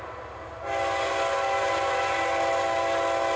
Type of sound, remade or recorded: recorded